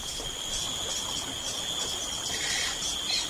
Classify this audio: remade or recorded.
recorded